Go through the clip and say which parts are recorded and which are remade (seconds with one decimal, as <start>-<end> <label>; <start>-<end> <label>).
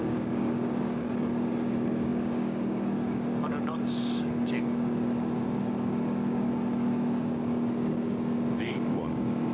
0.0-9.5 remade